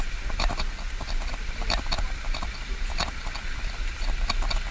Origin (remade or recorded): remade